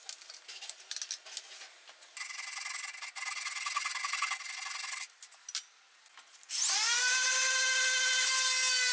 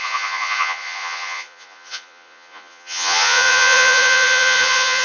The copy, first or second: second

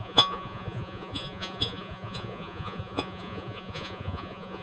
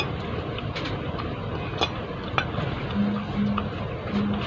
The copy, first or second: first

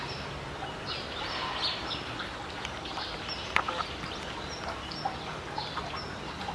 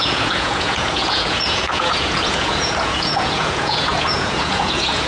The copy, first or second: second